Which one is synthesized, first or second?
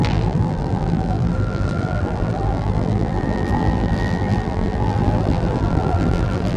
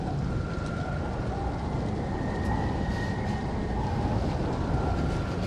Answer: first